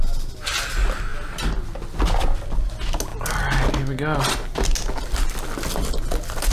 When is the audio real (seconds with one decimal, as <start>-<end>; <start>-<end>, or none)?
0.0-6.5